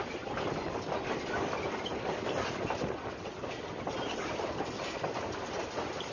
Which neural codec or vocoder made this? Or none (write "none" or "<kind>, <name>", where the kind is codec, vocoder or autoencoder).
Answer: none